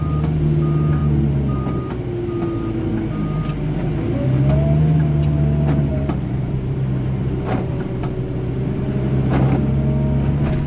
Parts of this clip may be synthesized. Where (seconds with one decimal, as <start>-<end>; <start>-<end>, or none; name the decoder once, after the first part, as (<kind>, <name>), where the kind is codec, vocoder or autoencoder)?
5.9-7.7 (vocoder, BigVGAN v2)